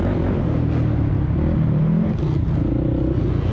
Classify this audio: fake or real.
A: real